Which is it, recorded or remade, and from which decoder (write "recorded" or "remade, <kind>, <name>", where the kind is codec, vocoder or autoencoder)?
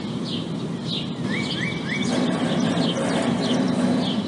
recorded